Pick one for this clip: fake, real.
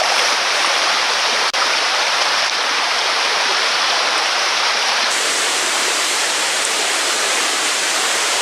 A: fake